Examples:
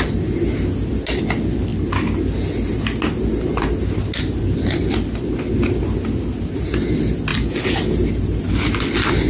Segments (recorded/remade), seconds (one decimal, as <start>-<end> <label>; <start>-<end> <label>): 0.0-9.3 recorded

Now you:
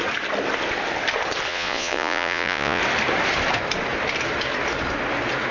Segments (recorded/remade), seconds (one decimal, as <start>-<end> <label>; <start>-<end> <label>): 0.0-1.5 recorded; 1.5-2.8 remade; 2.8-5.5 recorded

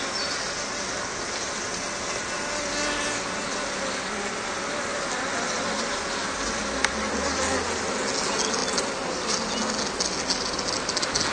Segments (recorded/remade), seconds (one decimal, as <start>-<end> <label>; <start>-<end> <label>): 0.0-11.3 recorded